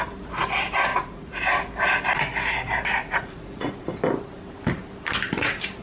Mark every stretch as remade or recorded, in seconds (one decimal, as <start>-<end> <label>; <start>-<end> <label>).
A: 0.0-0.9 recorded; 0.9-1.4 remade; 1.4-3.0 recorded; 3.0-3.7 remade; 3.7-5.8 recorded